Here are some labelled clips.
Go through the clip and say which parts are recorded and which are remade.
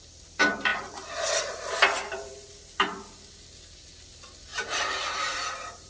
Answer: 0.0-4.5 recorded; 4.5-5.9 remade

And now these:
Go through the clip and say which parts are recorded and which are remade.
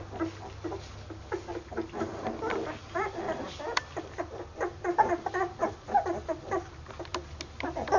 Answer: 0.0-8.0 recorded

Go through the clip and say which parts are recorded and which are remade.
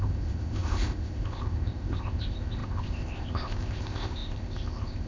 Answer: 0.0-5.1 remade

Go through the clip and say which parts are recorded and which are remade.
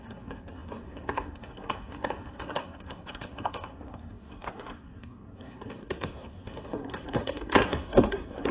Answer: 0.0-8.5 remade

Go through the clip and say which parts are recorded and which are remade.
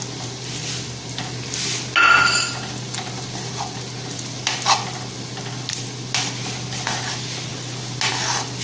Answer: 0.0-8.6 recorded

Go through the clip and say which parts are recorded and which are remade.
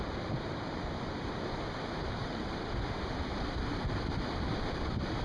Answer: 0.0-2.2 recorded; 2.2-4.5 remade; 4.5-5.2 recorded